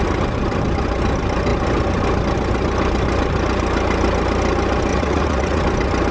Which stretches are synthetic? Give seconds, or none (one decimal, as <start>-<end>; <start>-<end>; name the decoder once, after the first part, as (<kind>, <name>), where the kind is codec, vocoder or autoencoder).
4.9-5.6 (vocoder, Vocos)